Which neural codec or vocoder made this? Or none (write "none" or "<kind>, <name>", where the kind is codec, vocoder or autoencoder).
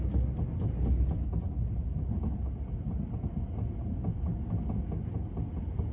none